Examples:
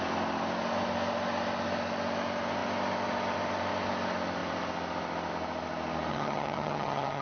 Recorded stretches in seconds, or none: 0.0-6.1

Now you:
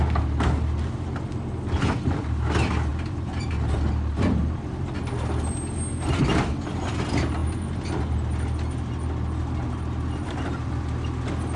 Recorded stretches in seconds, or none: 0.0-2.9; 3.5-11.6

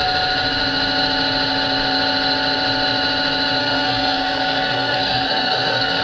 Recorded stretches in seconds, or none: 0.0-3.6

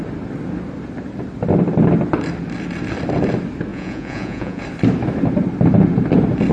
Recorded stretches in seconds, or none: 0.0-3.7; 4.6-6.5

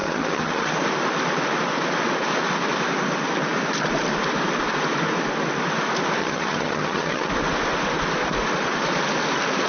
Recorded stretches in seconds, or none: 0.7-6.2; 7.3-9.7

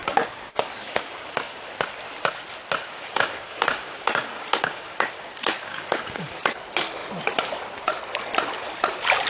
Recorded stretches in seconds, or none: 1.7-2.8; 6.4-9.3

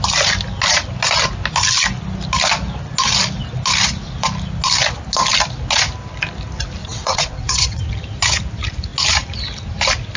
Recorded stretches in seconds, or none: 0.0-6.8; 7.8-10.2